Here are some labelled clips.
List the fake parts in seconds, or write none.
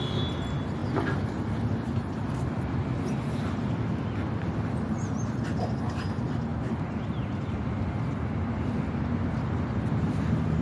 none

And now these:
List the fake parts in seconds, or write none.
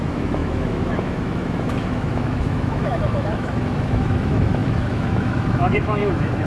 0.0-6.5 (autoencoder, DAC-VAE)